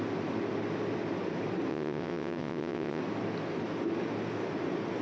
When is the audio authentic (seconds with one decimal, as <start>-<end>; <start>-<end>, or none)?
0.0-1.7; 3.0-5.0